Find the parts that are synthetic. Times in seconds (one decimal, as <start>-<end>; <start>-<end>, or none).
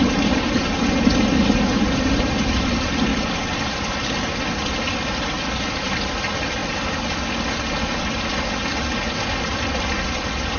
0.0-3.1; 5.8-6.6